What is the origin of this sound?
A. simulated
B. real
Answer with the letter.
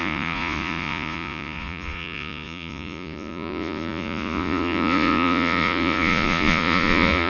A